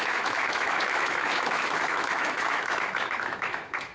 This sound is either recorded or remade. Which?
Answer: remade